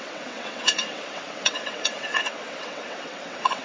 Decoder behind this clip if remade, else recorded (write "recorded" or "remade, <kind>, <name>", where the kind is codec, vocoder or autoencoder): remade, vocoder, WaveNeXt